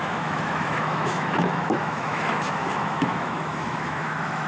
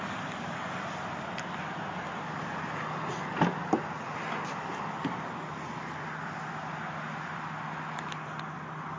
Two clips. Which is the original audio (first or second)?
second